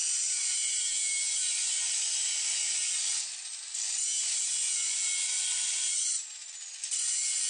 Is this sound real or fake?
real